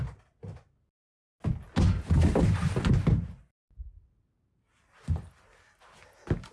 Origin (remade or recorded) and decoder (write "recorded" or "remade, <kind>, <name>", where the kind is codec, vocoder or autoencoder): recorded